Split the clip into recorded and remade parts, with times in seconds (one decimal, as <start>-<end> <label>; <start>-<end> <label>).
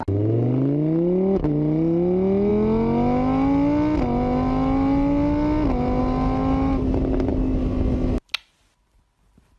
0.0-9.6 recorded